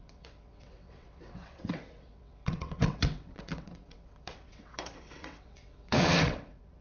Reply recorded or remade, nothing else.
remade